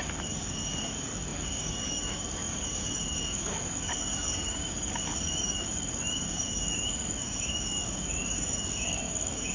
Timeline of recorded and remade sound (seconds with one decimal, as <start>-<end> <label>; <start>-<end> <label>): 0.0-9.5 remade